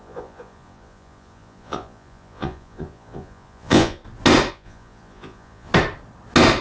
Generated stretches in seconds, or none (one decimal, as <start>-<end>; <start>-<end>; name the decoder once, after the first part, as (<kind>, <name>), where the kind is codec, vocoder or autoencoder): 0.0-4.0 (vocoder, Vocos); 4.5-5.7